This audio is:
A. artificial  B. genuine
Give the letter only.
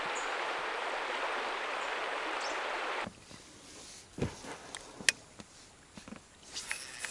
B